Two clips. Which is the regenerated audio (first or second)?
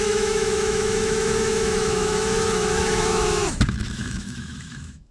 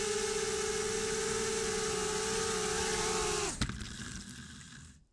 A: first